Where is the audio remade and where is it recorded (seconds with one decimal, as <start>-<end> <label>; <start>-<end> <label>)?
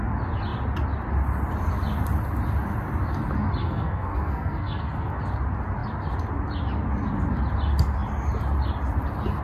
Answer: 0.0-3.6 recorded; 3.6-5.2 remade; 5.2-9.4 recorded